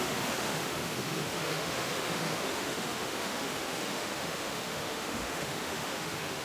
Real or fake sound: fake